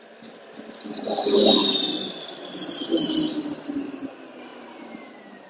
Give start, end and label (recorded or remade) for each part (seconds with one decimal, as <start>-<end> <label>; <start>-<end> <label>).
0.0-5.5 recorded